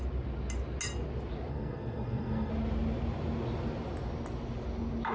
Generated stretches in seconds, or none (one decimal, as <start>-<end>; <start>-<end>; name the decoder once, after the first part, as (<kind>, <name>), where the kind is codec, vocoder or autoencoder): 1.5-2.5 (codec, SNAC)